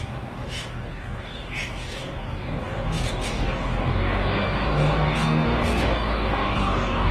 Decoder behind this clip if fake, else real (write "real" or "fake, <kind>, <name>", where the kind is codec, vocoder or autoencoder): fake, codec, DAC